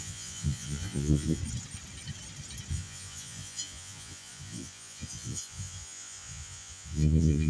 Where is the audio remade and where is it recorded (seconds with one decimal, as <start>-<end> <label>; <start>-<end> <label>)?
0.0-1.4 remade; 1.4-2.7 recorded; 2.7-7.5 remade